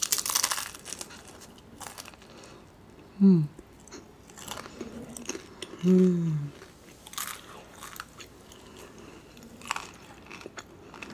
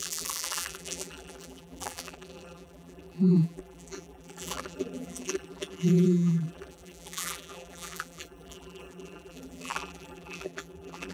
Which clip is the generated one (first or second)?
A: second